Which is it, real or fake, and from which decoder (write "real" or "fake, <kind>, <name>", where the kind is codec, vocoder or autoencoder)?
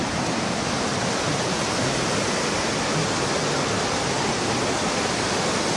real